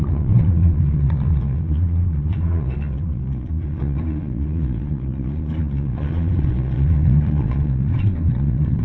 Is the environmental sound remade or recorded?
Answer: remade